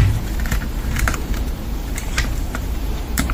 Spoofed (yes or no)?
yes